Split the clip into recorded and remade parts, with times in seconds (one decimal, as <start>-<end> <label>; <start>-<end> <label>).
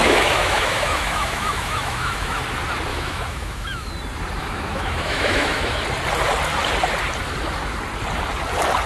0.0-2.4 remade; 2.4-2.9 recorded; 2.9-3.9 remade; 3.9-4.4 recorded; 4.4-5.8 remade; 5.8-8.9 recorded